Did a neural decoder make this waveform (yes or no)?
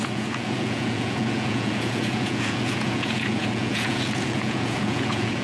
yes